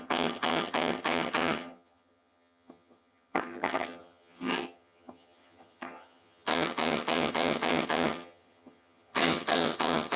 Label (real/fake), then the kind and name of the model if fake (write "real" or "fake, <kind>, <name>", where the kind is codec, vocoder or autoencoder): fake, vocoder, HiFi-GAN